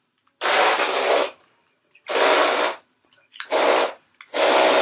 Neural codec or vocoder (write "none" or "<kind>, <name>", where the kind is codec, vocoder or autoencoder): none